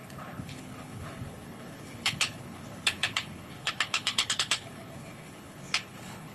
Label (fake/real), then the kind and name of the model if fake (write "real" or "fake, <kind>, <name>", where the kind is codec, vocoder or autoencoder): fake, codec, HILCodec